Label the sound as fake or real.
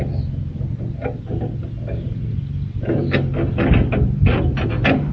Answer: real